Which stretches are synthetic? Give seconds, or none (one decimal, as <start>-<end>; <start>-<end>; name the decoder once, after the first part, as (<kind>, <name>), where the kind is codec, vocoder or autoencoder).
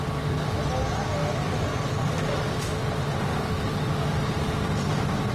none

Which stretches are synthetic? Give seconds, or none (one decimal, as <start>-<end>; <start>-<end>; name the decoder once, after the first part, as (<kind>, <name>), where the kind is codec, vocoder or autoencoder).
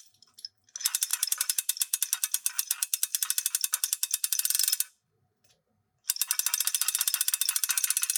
1.1-2.0 (vocoder, BigVGAN v2)